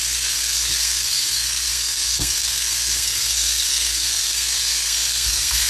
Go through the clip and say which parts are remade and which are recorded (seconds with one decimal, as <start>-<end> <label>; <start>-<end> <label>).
0.0-5.7 remade